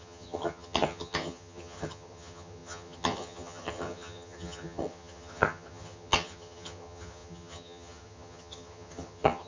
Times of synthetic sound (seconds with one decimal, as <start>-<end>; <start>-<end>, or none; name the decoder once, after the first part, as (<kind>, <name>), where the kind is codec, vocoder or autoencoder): 0.0-9.5 (vocoder, HiFi-GAN)